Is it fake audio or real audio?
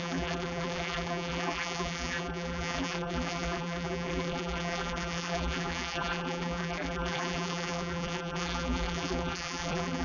fake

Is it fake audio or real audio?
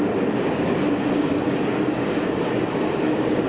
fake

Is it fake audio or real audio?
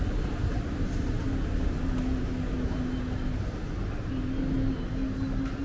real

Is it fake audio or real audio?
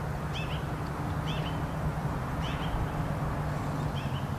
real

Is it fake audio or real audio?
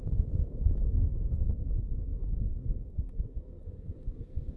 fake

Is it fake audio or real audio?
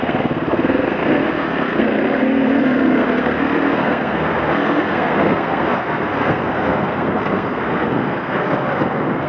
fake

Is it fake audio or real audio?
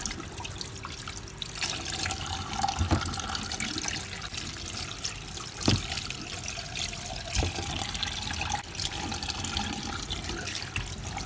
real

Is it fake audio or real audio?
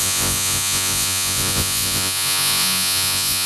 fake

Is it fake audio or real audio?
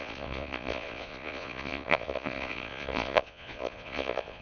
fake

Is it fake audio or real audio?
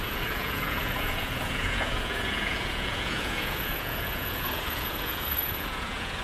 fake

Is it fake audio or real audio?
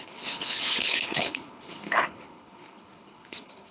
fake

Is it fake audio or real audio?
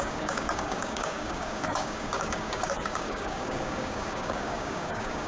fake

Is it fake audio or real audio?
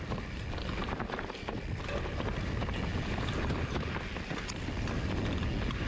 real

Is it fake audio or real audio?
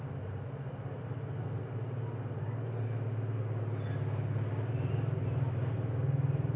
real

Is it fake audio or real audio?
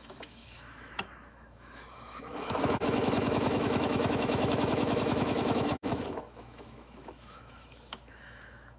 fake